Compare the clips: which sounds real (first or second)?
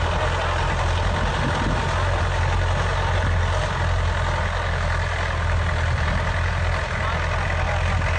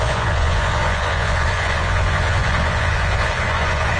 first